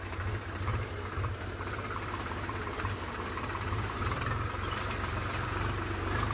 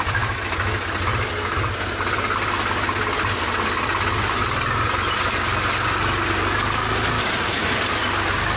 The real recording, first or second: second